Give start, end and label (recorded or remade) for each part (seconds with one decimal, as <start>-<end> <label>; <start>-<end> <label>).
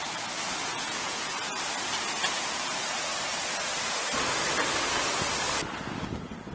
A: 0.0-0.7 recorded; 0.7-1.3 remade; 1.3-6.5 recorded